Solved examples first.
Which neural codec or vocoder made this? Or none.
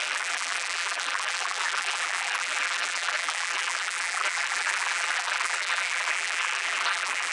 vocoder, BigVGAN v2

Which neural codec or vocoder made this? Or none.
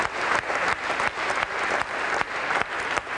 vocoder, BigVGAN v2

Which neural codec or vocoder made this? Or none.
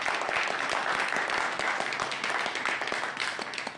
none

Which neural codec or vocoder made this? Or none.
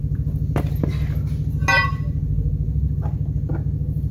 none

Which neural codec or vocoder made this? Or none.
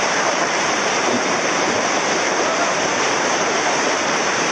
vocoder, BigVGAN v2